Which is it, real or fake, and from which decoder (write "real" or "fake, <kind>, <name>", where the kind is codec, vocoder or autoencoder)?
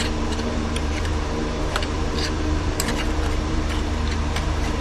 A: fake, vocoder, BigVGAN v2